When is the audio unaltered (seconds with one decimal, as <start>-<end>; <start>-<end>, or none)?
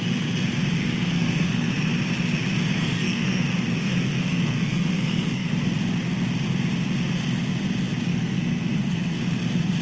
0.0-0.8; 1.7-2.8; 3.4-3.8; 5.5-8.1; 9.2-9.8